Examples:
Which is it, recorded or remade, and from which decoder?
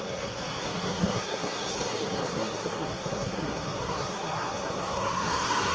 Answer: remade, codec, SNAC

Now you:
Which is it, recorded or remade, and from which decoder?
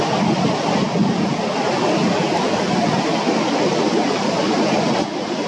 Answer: recorded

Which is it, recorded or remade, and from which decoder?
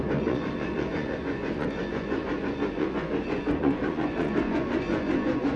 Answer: remade, vocoder, Vocos